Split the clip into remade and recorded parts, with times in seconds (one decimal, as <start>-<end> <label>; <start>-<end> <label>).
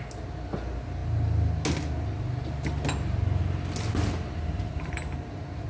0.0-5.7 recorded